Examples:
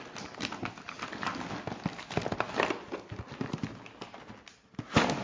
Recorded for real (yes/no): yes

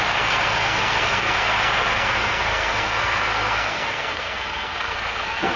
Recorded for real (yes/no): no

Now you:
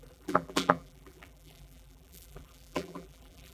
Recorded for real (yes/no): no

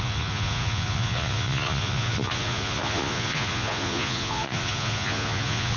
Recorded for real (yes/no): no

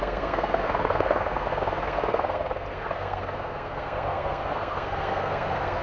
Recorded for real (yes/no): no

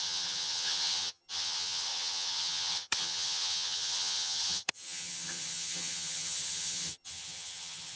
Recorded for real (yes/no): no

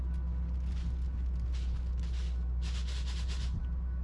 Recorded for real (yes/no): yes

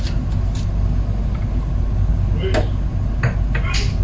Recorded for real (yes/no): yes